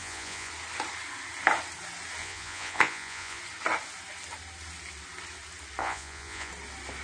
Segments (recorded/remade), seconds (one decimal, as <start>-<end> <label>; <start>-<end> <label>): 0.0-0.5 remade; 0.5-2.2 recorded; 2.2-3.4 remade; 3.4-5.8 recorded; 5.8-6.5 remade; 6.5-7.0 recorded

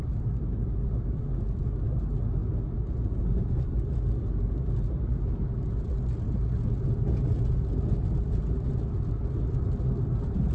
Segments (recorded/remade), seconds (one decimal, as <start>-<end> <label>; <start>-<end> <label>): 0.0-10.5 recorded

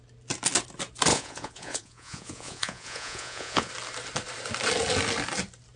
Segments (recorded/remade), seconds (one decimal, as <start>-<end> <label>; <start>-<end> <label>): 0.0-1.1 recorded; 1.1-3.7 remade; 3.7-5.8 recorded

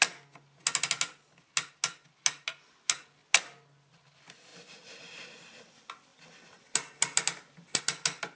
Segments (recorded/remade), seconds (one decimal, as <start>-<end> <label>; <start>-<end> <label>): 0.0-8.4 recorded

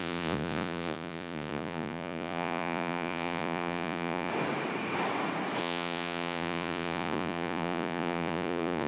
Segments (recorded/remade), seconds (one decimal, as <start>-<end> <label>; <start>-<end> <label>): 0.0-4.3 remade; 4.3-5.6 recorded; 5.6-8.9 remade

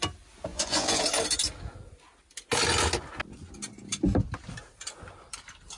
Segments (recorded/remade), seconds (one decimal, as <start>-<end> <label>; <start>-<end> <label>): 0.0-0.5 recorded; 0.5-1.0 remade; 1.0-5.8 recorded

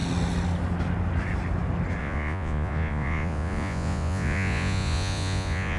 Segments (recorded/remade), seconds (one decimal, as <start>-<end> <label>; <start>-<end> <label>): 0.0-2.0 recorded; 2.0-5.8 remade

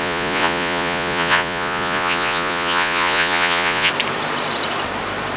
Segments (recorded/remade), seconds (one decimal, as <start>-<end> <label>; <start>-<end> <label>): 0.0-3.9 remade; 3.9-5.4 recorded